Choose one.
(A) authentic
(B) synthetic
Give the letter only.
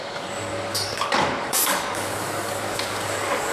B